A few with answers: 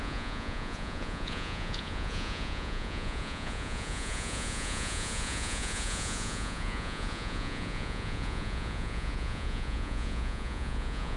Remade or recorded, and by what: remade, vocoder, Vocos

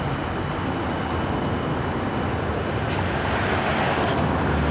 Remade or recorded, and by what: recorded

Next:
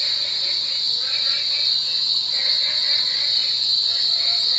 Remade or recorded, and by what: recorded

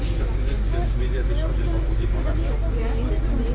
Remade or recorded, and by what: recorded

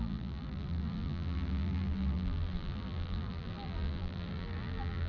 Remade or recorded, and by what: remade, vocoder, BigVGAN v2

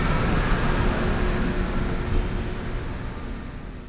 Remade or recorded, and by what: recorded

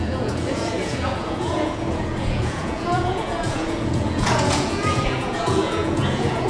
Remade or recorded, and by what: remade, vocoder, Vocos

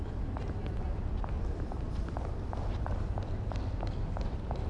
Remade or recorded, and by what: recorded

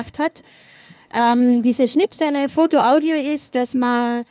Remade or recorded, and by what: remade, codec, SNAC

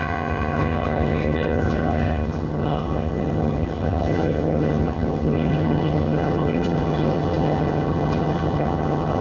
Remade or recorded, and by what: remade, vocoder, HiFi-GAN